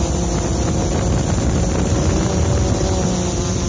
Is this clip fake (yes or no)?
no